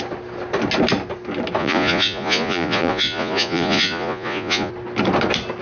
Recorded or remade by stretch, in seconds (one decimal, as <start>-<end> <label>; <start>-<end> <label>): 0.0-1.6 recorded; 1.6-4.7 remade; 4.7-5.6 recorded